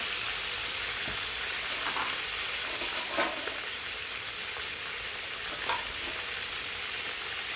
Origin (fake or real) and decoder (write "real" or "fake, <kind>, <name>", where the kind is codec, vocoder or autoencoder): real